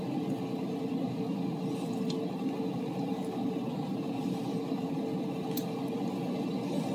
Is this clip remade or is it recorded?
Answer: recorded